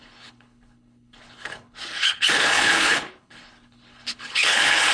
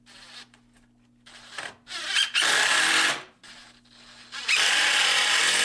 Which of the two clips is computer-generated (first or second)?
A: first